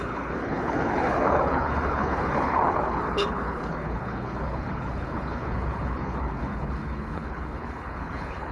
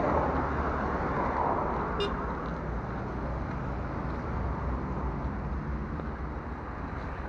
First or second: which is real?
second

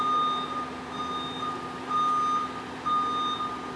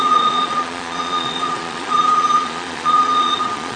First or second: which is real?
first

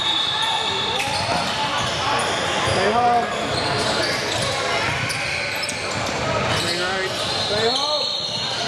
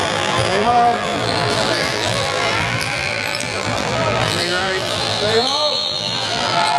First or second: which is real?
first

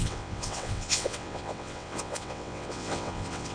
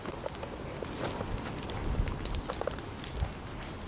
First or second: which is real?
second